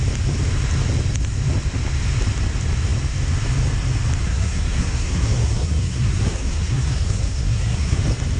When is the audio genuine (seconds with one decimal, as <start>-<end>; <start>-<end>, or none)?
0.0-4.2; 8.0-8.4